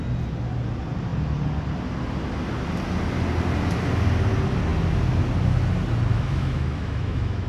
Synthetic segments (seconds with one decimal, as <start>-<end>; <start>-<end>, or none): 6.1-7.5